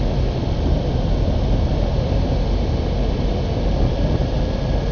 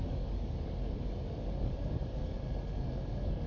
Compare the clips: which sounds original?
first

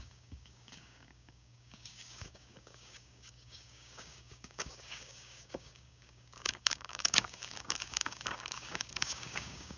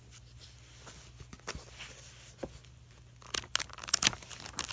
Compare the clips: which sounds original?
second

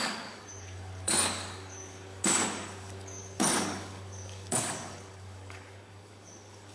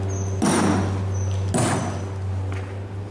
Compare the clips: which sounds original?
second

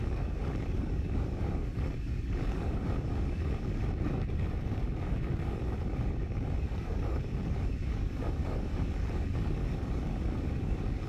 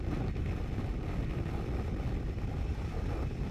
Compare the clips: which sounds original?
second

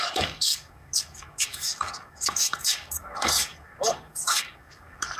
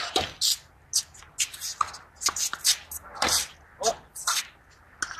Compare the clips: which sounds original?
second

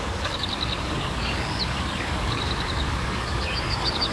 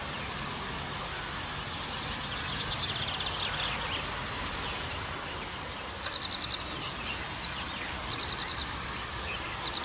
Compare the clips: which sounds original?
second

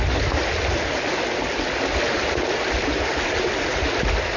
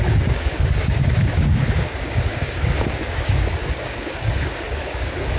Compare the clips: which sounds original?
first